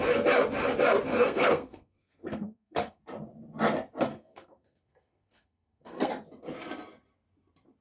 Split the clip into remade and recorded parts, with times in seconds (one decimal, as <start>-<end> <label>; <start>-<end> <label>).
0.0-1.1 recorded; 1.1-3.0 remade; 3.0-4.1 recorded; 4.1-6.1 remade; 6.1-7.8 recorded